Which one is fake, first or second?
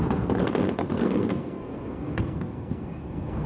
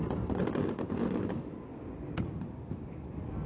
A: first